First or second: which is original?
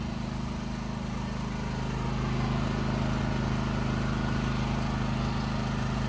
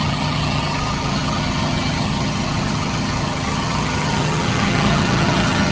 first